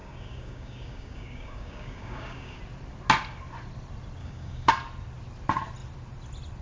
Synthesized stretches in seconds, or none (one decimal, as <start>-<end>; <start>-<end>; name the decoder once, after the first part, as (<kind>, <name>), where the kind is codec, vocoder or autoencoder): 0.0-2.6 (codec, DAC); 4.2-4.7